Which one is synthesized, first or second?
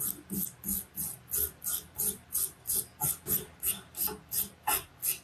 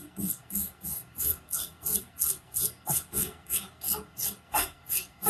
second